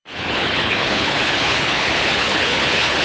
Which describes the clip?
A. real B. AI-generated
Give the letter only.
B